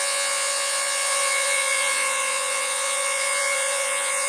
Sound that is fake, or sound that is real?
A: fake